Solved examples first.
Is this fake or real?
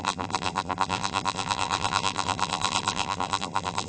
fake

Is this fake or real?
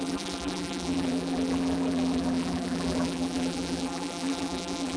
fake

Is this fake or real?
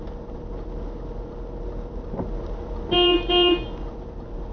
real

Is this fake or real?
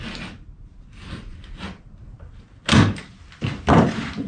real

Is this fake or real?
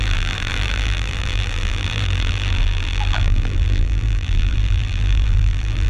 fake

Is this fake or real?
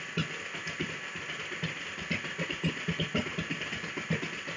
real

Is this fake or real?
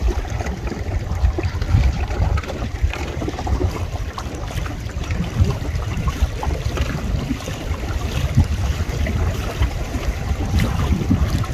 fake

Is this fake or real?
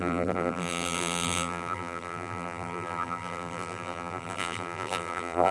fake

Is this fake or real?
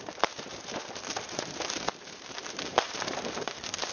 fake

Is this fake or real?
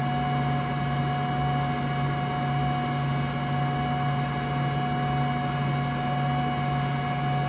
real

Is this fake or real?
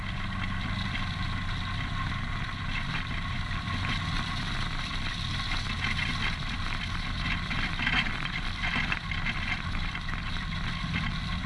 fake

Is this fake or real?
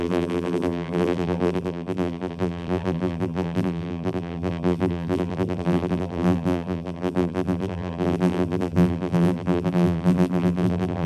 fake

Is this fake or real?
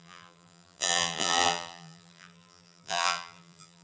fake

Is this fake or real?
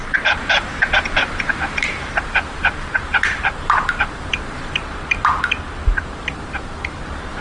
fake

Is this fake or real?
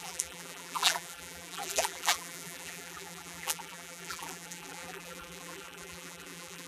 fake